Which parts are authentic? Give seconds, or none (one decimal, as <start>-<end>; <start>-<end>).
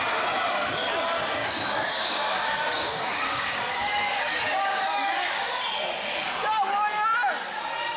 0.0-1.4; 5.6-8.0